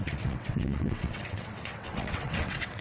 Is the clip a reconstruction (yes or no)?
yes